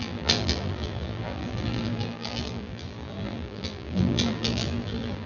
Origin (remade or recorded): remade